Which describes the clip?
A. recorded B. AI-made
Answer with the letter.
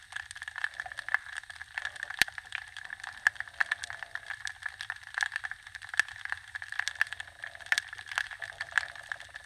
A